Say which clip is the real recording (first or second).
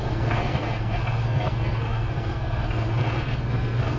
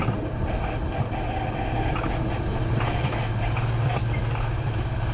second